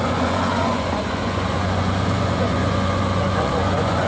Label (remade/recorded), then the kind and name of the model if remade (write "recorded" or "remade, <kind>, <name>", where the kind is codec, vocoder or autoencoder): remade, vocoder, Vocos